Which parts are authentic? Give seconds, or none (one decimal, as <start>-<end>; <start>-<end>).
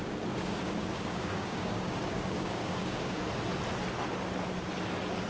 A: 3.2-5.3